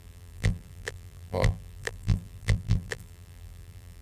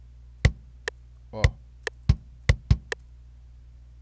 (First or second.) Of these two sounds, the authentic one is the second